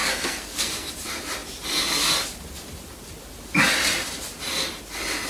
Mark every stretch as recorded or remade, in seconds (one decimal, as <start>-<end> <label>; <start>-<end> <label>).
0.0-0.9 remade; 0.9-5.3 recorded